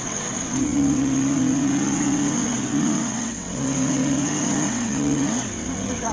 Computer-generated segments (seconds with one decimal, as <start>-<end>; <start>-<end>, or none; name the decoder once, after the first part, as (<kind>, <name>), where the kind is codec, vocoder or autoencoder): 0.0-6.1 (vocoder, WaveNeXt)